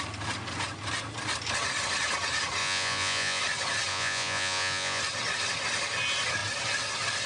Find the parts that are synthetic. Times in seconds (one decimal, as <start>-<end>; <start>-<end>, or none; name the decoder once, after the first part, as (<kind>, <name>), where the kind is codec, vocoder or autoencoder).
2.6-3.4 (vocoder, Vocos); 3.9-5.0